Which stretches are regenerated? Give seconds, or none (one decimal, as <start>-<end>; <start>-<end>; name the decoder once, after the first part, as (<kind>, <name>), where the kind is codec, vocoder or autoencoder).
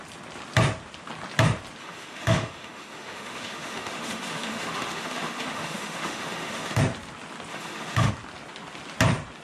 1.8-6.8 (autoencoder, DAC-VAE); 7.5-8.1